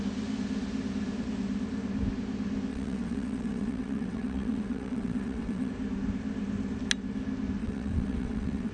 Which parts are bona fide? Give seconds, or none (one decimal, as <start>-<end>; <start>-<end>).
0.0-2.7; 5.7-7.6